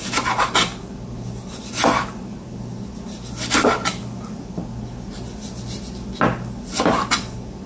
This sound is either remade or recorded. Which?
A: recorded